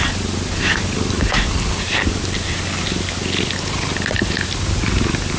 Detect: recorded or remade recorded